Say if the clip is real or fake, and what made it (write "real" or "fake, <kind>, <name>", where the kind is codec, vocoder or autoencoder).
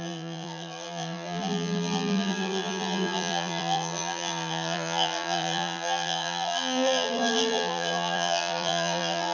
fake, vocoder, BigVGAN v2